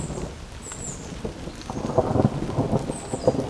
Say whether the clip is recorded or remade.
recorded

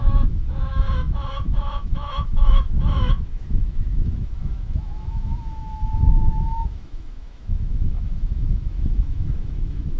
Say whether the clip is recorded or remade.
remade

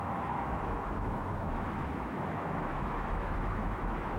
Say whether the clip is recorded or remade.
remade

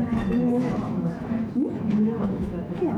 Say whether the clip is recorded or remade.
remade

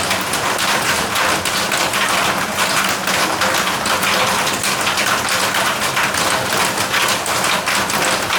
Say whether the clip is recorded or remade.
recorded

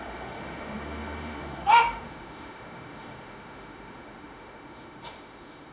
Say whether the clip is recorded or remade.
remade